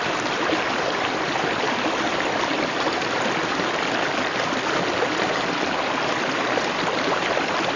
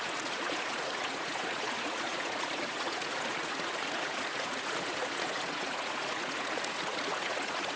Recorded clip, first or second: first